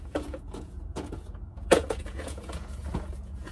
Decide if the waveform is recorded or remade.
remade